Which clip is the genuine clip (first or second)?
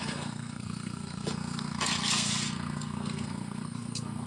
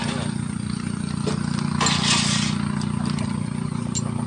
second